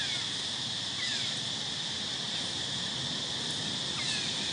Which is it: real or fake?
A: real